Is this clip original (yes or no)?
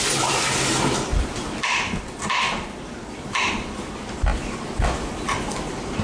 no